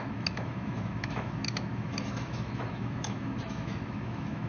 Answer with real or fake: fake